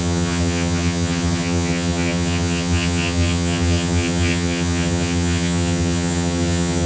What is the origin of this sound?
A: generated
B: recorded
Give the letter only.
A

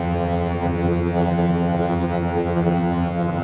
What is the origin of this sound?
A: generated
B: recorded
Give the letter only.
A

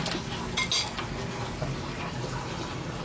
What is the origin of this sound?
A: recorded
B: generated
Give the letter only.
A